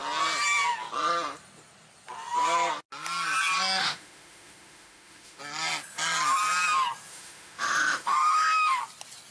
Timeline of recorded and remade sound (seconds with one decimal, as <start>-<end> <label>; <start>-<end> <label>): 0.0-3.8 recorded; 3.8-5.4 remade; 5.4-7.1 recorded; 7.1-8.8 remade; 8.8-9.3 recorded